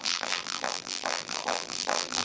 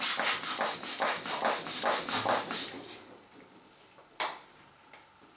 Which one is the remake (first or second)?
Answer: first